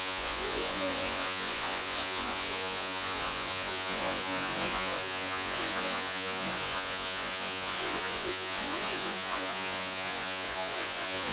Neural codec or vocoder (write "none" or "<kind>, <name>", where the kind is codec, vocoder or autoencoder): vocoder, Vocos